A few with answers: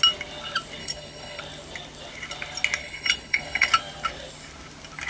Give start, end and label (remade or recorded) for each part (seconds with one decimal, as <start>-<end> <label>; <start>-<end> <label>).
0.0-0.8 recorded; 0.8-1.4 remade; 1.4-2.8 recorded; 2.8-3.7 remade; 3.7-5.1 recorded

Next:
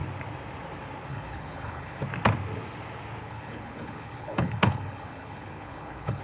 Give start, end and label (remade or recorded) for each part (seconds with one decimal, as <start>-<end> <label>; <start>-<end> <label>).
0.0-1.1 recorded; 1.1-2.0 remade; 2.0-3.2 recorded; 3.2-6.2 remade

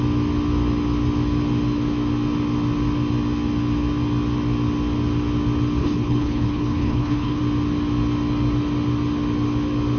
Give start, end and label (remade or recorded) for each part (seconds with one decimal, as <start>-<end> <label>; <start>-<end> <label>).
0.0-5.8 recorded; 5.8-7.4 remade; 7.4-10.0 recorded

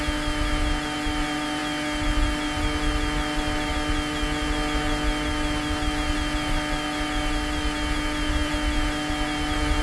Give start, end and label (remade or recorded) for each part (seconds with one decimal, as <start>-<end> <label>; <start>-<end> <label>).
0.0-9.8 recorded

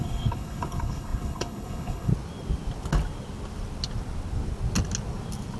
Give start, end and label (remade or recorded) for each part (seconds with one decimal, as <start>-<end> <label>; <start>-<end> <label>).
0.0-2.1 remade; 2.1-5.6 recorded

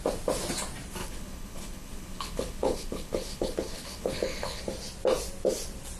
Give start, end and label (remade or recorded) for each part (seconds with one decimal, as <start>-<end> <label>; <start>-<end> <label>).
0.0-1.0 recorded; 1.0-4.6 remade; 4.6-6.0 recorded